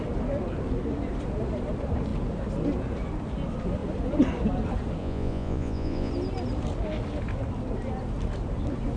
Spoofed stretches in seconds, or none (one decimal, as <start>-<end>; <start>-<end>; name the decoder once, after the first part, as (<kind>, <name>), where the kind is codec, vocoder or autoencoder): 5.0-6.1 (vocoder, Vocos)